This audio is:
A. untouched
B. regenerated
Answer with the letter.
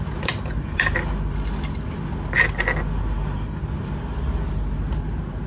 A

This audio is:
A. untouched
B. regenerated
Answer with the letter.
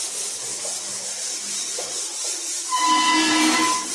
A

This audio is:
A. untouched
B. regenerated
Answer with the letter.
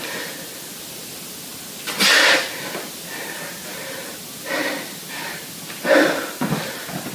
A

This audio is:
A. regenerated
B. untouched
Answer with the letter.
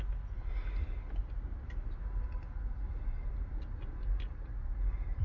B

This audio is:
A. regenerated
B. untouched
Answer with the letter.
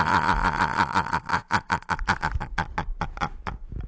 B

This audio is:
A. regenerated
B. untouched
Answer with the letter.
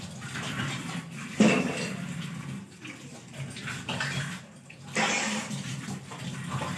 B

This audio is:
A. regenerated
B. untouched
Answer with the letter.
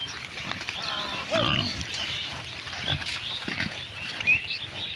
B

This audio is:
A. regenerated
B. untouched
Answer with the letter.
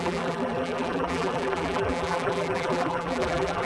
A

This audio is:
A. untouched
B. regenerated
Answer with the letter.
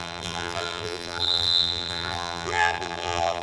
B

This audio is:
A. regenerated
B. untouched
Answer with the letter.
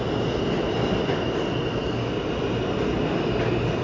B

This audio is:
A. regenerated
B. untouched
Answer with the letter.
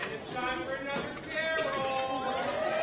B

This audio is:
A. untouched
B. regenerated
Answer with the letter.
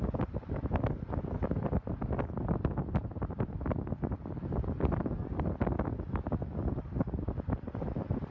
A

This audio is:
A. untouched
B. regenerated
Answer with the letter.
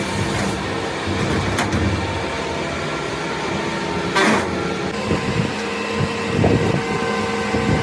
A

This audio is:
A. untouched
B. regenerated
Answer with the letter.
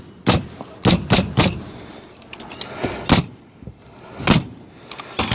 A